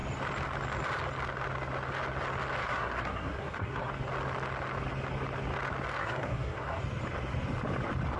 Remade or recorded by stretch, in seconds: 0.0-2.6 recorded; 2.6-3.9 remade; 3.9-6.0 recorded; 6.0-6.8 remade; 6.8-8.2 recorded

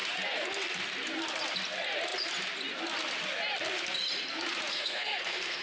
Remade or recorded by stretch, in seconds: 0.0-4.7 recorded; 4.7-5.6 remade

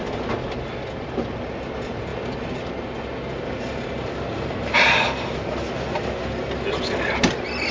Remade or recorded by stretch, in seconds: 0.0-7.7 recorded

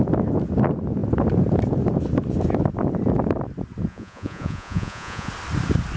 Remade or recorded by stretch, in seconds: 0.0-3.9 recorded; 3.9-5.3 remade; 5.3-6.0 recorded

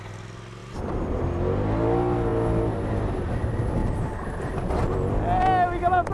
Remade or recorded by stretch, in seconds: 0.0-0.6 recorded; 0.6-1.2 remade; 1.2-3.8 recorded; 3.8-4.6 remade; 4.6-6.1 recorded

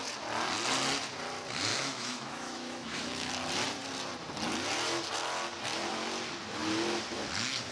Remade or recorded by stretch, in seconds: 0.0-1.7 recorded; 1.7-3.3 remade; 3.3-7.7 recorded